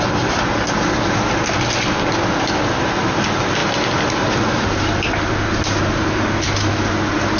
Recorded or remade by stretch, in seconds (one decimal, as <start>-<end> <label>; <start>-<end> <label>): 0.0-7.4 recorded